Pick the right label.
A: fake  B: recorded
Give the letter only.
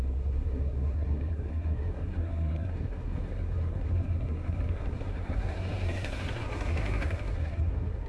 A